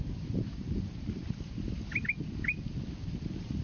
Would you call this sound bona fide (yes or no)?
yes